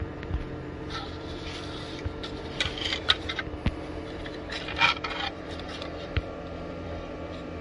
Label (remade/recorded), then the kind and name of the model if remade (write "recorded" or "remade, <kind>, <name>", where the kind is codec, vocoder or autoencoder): remade, vocoder, BigVGAN v2